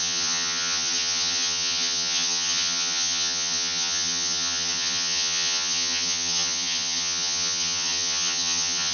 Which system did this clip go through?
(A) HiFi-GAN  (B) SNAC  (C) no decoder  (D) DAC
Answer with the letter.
A